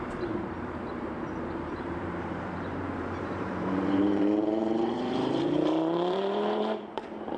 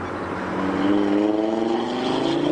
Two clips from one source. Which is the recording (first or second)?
second